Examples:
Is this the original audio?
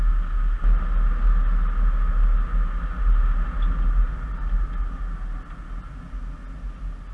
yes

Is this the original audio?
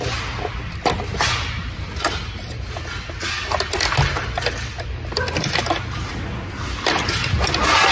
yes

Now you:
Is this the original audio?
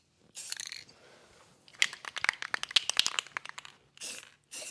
yes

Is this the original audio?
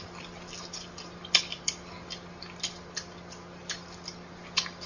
yes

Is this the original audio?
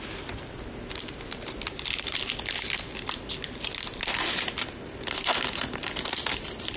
yes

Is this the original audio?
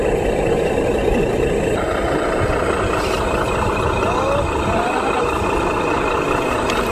yes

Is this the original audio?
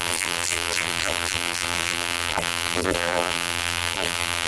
no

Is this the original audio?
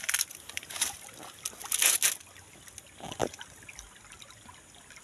yes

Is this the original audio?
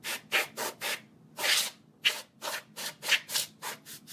yes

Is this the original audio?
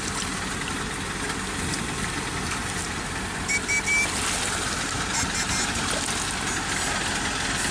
yes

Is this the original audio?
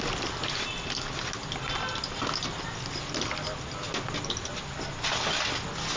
yes